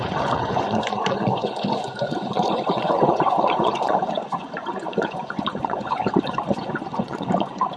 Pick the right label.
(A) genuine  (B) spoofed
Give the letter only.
B